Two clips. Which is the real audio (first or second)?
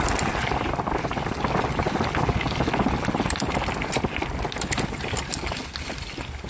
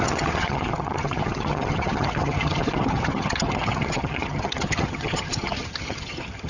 first